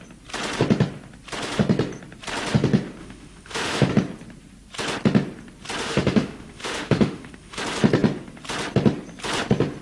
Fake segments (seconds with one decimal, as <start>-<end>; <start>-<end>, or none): 3.0-3.9; 5.8-7.6